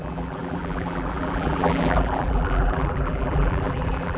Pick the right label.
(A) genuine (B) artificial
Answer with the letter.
B